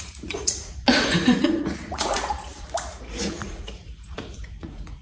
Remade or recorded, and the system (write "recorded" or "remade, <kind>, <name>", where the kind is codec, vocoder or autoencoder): remade, vocoder, Vocos